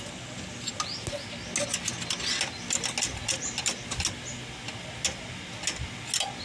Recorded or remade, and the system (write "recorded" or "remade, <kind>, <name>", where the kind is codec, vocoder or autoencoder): recorded